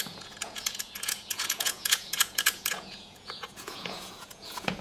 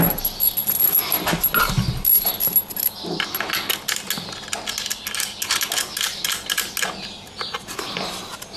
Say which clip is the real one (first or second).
second